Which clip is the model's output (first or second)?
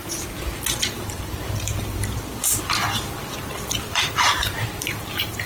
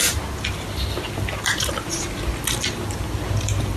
first